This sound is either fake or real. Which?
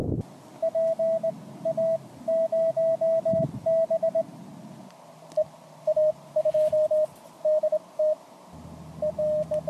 real